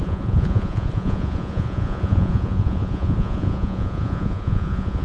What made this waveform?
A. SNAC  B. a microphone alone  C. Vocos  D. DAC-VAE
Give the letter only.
C